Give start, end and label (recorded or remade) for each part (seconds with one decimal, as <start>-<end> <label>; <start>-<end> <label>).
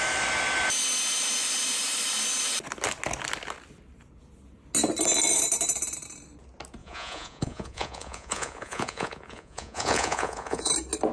0.0-6.8 recorded; 6.8-10.7 remade; 10.7-11.1 recorded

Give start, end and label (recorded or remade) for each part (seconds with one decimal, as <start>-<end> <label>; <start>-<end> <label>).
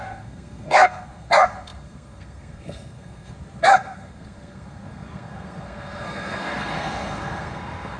0.0-8.0 remade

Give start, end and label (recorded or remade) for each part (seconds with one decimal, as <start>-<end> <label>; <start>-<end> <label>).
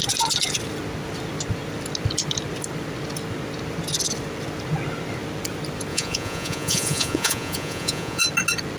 0.0-5.9 recorded; 5.9-8.2 remade; 8.2-8.8 recorded